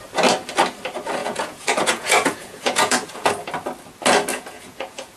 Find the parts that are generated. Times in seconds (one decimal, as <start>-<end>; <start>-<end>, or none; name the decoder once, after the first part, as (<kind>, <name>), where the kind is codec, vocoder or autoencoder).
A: 1.2-3.3 (vocoder, Vocos); 4.3-5.2